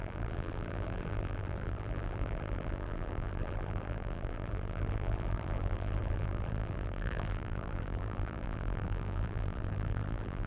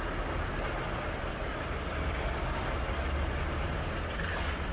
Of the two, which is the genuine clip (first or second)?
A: second